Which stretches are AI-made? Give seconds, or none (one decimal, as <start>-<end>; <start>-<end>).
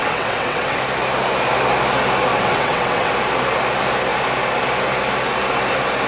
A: 0.0-0.8; 2.3-3.1